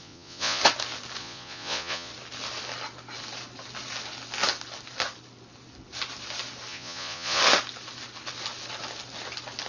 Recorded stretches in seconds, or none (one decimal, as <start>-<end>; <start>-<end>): 0.6-1.2; 2.1-6.7; 7.4-9.7